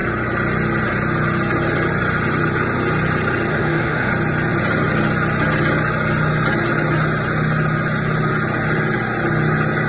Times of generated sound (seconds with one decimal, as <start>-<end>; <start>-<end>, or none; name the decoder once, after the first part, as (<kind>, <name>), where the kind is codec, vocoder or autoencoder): 3.5-4.1 (autoencoder, DAC-VAE)